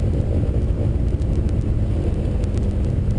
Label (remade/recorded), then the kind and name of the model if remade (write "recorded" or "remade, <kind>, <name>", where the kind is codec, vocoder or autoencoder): recorded